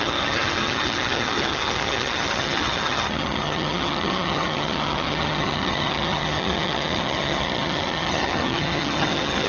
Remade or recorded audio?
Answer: remade